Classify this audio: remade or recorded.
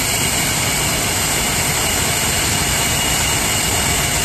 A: recorded